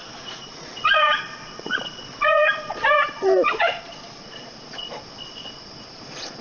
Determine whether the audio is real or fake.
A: fake